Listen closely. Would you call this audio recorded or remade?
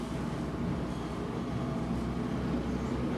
recorded